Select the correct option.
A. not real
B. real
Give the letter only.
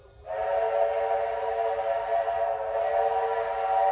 B